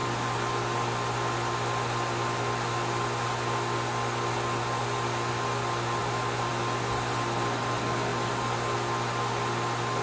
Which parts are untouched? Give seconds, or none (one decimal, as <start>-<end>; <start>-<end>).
0.0-10.0